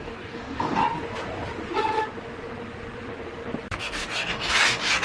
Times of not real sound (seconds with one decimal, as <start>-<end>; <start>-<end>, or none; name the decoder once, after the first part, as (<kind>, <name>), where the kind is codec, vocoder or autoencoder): 0.0-0.8 (codec, DAC); 3.8-5.0